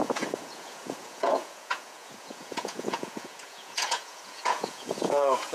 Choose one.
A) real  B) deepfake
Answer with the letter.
B